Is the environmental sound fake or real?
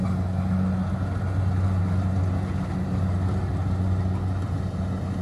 real